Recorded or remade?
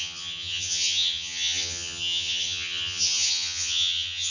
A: remade